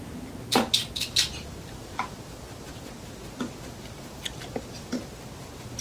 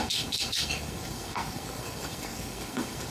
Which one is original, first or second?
first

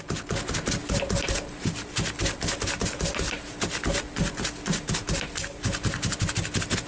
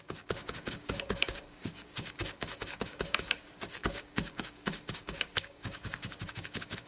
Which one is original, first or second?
first